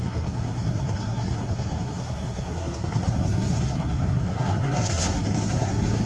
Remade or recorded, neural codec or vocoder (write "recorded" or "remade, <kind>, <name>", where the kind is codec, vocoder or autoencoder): remade, codec, SNAC